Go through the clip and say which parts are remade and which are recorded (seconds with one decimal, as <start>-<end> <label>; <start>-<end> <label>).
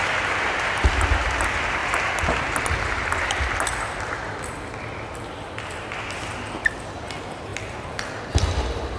0.0-7.5 recorded; 7.5-8.1 remade; 8.1-9.0 recorded